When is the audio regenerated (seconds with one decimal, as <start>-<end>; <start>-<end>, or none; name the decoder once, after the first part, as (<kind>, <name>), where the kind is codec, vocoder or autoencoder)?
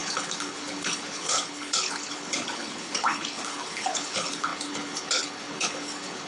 0.0-6.3 (codec, HILCodec)